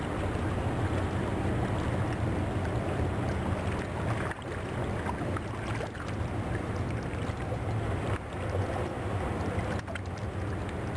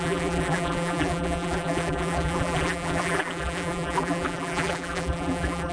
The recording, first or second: first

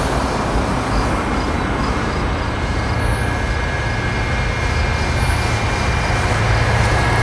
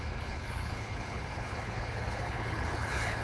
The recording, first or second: first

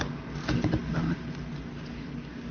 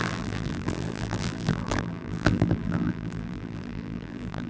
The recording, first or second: first